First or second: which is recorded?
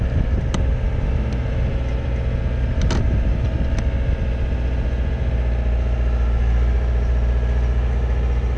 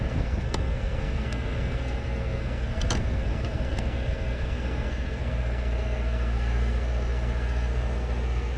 first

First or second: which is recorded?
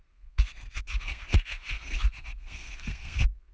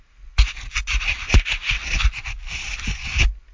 second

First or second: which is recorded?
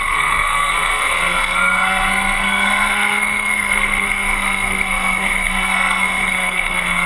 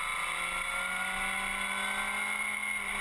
second